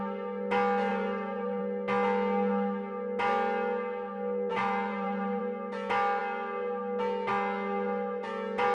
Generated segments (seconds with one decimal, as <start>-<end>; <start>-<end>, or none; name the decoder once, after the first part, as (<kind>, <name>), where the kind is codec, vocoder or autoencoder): 0.9-1.6 (vocoder, BigVGAN v2); 4.5-5.4